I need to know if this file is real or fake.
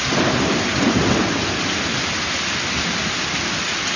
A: real